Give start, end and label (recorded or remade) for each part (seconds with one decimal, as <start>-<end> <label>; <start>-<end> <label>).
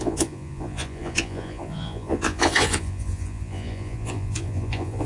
0.0-5.1 remade